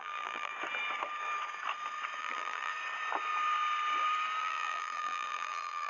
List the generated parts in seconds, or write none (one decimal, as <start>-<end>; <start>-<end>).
0.0-0.5; 2.2-2.7; 4.4-5.9